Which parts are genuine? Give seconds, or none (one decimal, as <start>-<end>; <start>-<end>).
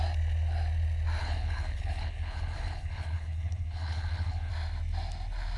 0.0-1.2; 4.5-5.6